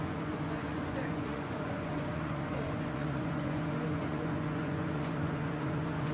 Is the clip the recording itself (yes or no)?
no